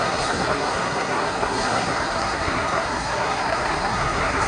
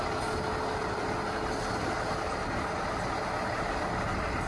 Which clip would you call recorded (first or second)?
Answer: second